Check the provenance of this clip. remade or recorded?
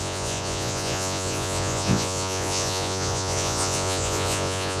remade